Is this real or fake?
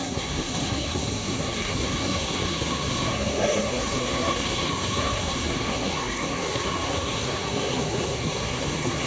fake